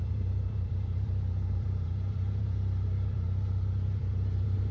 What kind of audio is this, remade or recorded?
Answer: remade